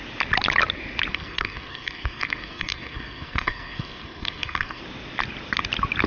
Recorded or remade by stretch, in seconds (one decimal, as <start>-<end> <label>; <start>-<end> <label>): 0.0-1.1 recorded; 1.1-4.8 remade; 4.8-6.1 recorded

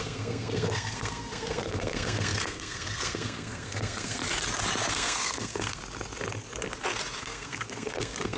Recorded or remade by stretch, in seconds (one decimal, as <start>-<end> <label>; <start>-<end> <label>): 0.0-4.2 remade; 4.2-4.9 recorded; 4.9-5.8 remade; 5.8-7.2 recorded; 7.2-8.4 remade

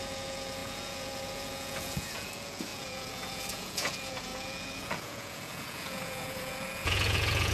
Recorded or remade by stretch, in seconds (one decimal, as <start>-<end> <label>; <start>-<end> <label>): 0.0-7.5 remade

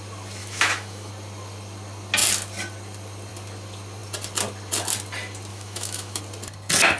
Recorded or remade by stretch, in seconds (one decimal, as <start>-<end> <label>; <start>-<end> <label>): 0.0-0.4 recorded; 0.4-1.1 remade; 1.1-5.5 recorded; 5.5-6.2 remade; 6.2-7.0 recorded

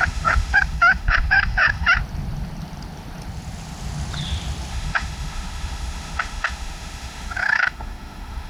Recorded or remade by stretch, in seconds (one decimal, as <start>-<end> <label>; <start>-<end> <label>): 0.0-2.0 remade; 2.0-4.7 recorded; 4.7-8.5 remade

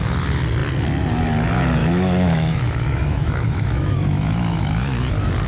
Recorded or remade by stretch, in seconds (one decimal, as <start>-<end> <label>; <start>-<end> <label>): 0.0-1.8 recorded; 1.8-5.1 remade; 5.1-5.5 recorded

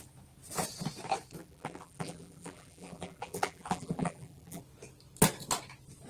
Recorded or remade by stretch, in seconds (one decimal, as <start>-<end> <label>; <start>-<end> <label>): 0.0-1.4 recorded; 1.4-4.6 remade; 4.6-6.1 recorded